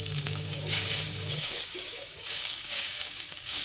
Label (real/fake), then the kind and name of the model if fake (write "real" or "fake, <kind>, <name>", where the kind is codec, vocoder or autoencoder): fake, codec, DAC